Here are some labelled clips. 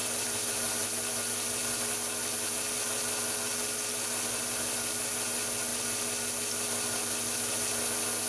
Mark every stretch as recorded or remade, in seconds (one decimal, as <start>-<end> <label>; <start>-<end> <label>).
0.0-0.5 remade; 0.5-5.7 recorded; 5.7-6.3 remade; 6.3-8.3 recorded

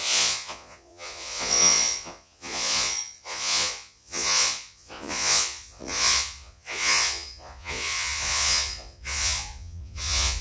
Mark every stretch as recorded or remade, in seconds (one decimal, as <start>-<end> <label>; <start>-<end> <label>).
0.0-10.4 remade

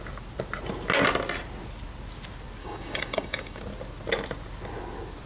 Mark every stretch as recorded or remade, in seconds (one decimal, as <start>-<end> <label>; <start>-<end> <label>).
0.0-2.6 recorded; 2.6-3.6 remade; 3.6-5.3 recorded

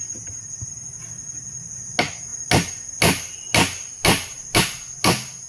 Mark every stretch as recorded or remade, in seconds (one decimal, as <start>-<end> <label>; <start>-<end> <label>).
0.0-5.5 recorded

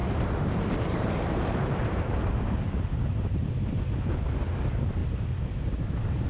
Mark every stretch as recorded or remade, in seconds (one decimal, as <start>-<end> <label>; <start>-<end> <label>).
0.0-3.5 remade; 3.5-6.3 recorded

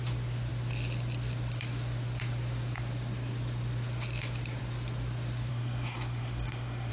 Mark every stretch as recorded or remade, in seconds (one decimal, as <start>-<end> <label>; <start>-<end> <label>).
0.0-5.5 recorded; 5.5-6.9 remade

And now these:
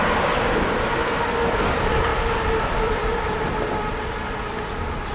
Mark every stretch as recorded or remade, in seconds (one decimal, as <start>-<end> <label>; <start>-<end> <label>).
0.0-5.1 remade

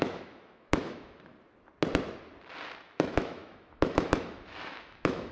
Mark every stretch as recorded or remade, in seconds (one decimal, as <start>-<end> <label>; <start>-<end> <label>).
0.0-1.3 remade; 1.3-2.8 recorded; 2.8-5.3 remade